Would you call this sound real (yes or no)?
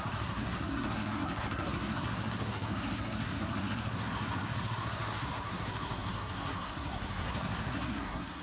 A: no